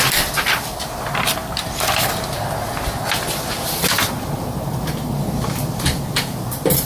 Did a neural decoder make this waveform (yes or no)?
no